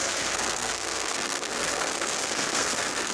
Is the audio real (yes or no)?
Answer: no